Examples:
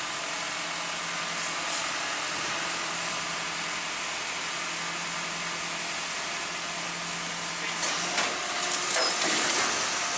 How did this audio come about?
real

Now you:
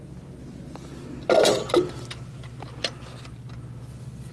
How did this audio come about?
real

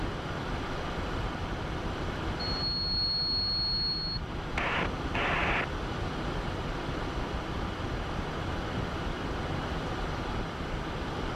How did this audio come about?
real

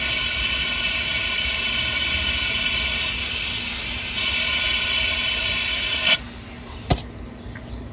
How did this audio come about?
real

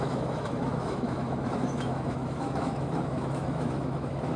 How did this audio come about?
fake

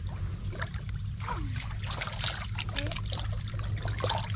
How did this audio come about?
real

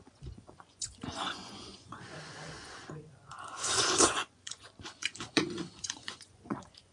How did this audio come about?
fake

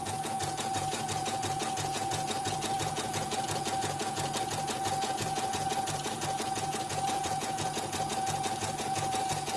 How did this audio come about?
fake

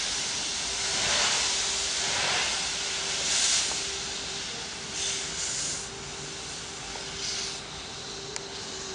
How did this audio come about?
real